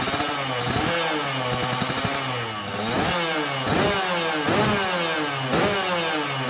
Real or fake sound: real